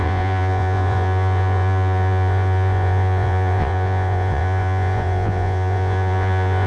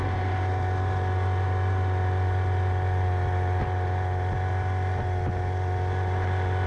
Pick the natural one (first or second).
second